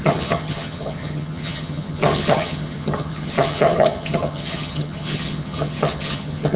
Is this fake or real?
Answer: fake